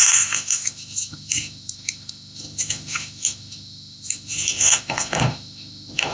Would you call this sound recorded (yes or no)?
no